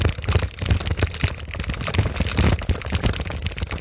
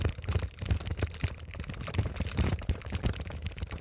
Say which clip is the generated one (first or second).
second